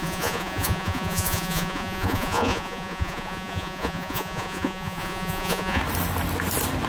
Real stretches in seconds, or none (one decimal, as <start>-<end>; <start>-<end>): 5.8-6.9